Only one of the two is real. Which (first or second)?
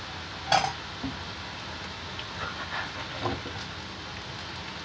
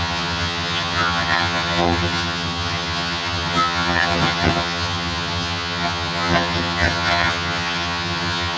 first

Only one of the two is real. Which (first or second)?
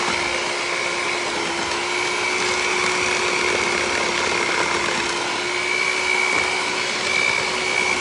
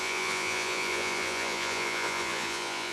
first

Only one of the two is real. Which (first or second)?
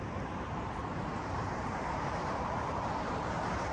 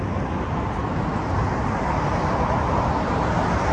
second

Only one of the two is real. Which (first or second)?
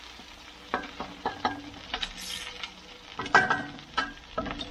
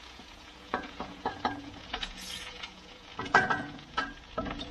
first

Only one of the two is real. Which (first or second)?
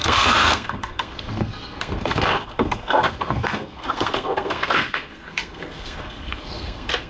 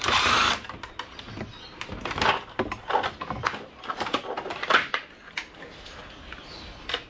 second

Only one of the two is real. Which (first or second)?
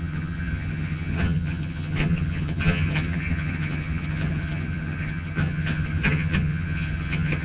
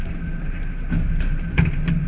second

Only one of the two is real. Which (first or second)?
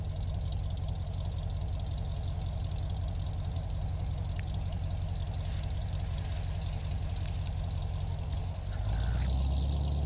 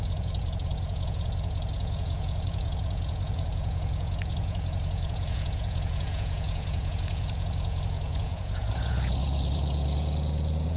first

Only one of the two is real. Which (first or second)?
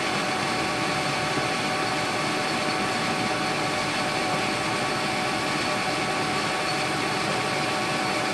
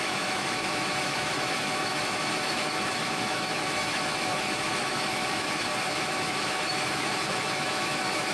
first